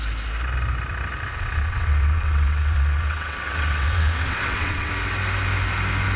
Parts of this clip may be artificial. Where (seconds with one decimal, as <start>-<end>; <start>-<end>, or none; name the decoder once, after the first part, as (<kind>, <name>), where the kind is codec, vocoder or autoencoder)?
1.3-4.9 (vocoder, WaveNeXt)